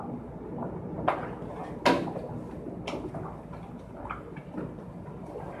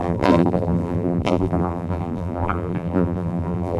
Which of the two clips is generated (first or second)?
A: second